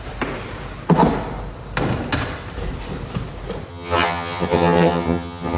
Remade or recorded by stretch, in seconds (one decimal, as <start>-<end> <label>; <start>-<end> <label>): 0.0-3.7 recorded; 3.7-5.6 remade